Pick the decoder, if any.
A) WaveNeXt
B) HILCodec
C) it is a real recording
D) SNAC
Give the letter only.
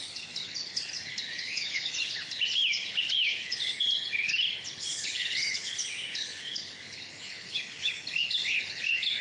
B